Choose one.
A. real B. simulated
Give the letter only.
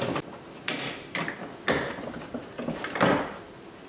A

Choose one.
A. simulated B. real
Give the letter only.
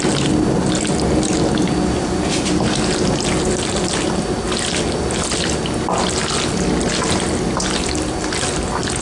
B